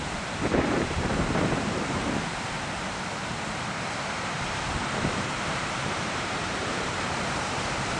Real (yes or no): no